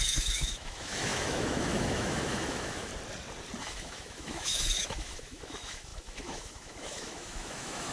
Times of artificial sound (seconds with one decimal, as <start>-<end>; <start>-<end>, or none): 0.0-2.9; 3.6-7.9